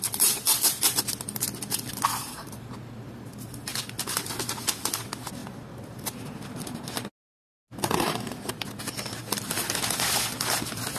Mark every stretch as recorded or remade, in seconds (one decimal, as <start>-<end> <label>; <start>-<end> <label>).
0.0-11.0 recorded